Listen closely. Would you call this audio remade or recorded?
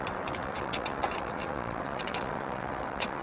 remade